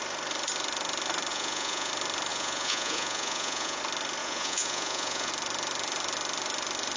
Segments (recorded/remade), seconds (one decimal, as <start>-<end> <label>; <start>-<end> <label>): 0.0-1.3 recorded; 1.3-1.9 remade; 1.9-2.3 recorded; 2.3-3.8 remade; 3.8-4.2 recorded; 4.2-5.3 remade; 5.3-7.0 recorded